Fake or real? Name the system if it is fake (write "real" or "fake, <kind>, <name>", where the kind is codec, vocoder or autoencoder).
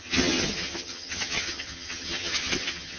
fake, vocoder, HiFi-GAN